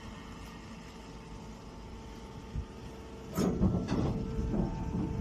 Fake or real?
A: real